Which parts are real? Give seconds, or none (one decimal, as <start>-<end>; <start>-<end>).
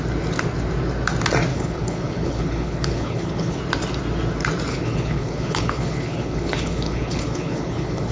0.0-1.5; 3.6-4.7